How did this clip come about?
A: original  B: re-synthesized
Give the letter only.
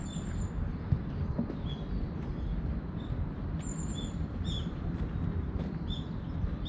A